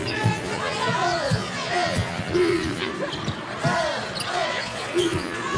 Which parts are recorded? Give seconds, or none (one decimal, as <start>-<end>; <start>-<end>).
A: 2.9-4.3